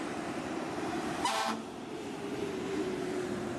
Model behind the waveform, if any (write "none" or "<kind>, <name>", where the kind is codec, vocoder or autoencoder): vocoder, BigVGAN v2